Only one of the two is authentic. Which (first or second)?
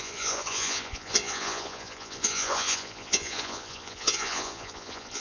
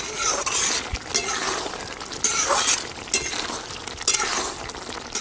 second